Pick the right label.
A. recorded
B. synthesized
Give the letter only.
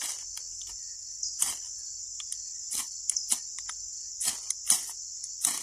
A